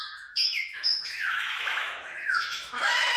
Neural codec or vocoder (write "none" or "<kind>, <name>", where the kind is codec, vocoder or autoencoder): autoencoder, DAC-VAE